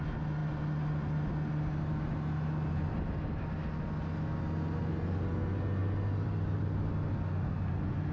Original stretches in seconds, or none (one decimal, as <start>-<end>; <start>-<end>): 0.0-8.1